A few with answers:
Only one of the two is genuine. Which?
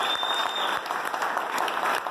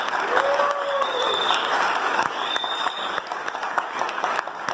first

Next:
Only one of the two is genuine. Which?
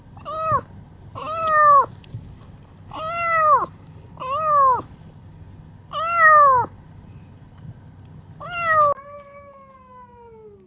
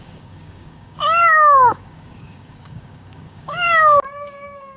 first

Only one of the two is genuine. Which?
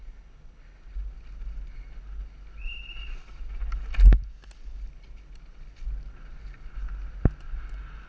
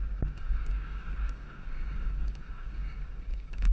first